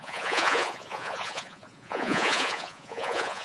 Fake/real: fake